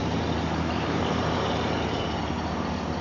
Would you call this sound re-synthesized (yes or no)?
yes